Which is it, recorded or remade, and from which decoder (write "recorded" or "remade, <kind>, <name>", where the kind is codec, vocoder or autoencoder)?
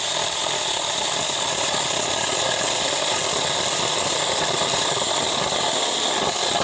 recorded